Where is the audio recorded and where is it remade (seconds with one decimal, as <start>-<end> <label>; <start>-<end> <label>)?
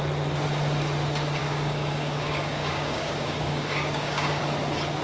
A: 0.0-1.4 recorded; 1.4-4.4 remade; 4.4-5.0 recorded